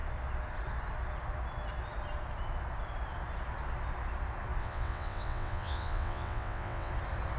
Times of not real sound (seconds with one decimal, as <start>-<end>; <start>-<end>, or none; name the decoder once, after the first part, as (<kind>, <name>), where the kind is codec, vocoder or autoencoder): 4.6-6.9 (vocoder, WaveNeXt)